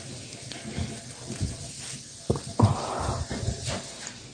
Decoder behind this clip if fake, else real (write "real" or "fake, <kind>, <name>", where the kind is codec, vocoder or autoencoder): real